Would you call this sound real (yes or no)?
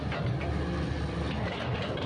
yes